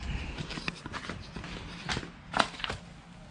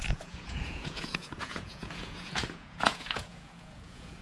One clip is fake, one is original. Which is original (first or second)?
first